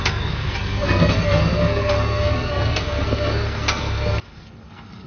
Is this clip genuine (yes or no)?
no